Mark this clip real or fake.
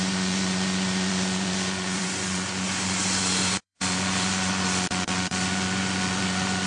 fake